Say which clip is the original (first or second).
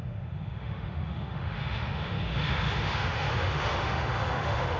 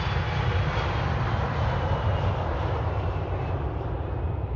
second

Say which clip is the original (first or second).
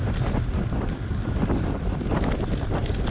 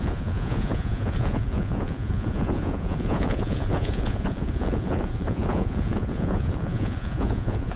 first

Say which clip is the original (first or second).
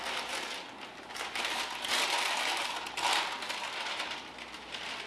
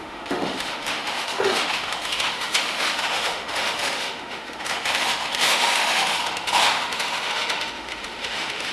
first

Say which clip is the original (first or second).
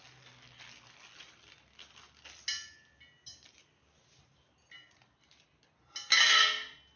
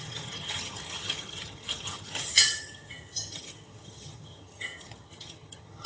first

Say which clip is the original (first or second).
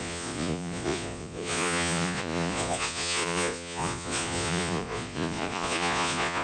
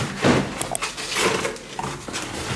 second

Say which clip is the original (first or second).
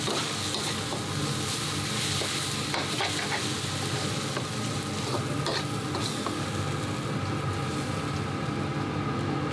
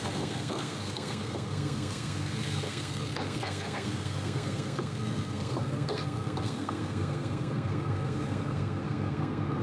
first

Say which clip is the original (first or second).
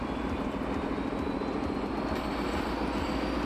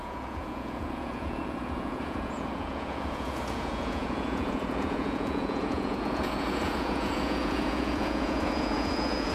first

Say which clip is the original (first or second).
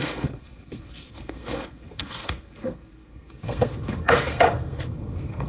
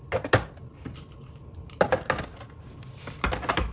second